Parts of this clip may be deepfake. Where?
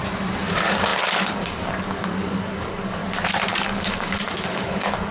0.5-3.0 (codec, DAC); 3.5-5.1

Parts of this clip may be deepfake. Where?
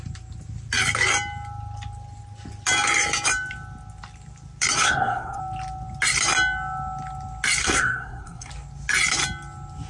4.8-5.4 (codec, SNAC); 7.6-8.5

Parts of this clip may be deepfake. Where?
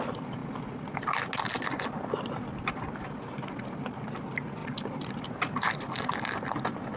none